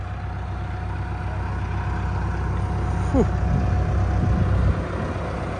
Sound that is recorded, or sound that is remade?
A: recorded